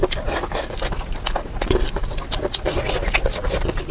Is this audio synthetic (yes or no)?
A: no